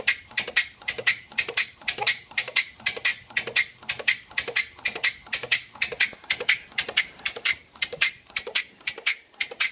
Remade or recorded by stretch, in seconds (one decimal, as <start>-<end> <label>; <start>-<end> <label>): 0.0-3.1 remade; 3.1-7.0 recorded; 7.0-9.7 remade